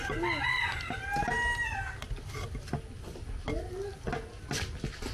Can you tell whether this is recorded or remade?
recorded